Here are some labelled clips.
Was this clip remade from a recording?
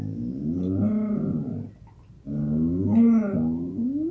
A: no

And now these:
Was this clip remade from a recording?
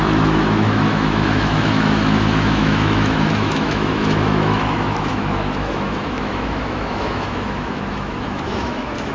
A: yes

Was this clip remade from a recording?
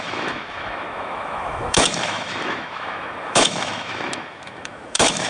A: yes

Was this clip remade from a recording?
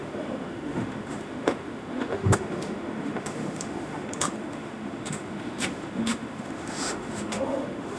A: yes